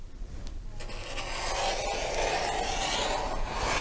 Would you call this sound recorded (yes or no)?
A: yes